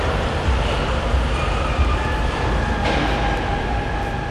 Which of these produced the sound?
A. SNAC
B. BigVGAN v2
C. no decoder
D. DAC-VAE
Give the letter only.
C